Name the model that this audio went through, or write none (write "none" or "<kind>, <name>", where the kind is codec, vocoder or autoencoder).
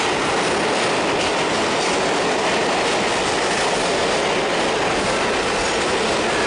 none